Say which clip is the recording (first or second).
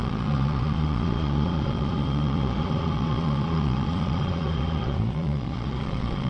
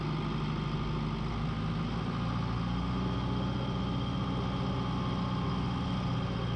second